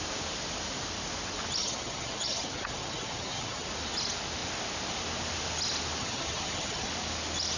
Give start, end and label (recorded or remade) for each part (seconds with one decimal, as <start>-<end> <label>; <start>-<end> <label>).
0.0-1.6 recorded; 1.6-3.7 remade; 3.7-6.0 recorded; 6.0-6.9 remade; 6.9-7.6 recorded